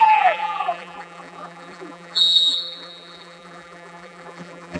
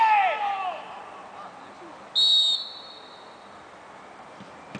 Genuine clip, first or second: second